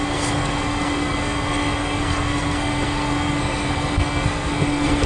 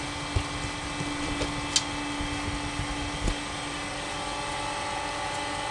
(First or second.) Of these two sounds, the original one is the second